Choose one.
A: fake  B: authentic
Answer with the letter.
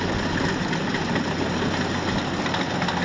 B